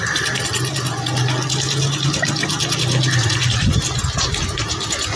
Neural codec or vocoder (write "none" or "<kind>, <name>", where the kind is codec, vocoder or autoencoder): none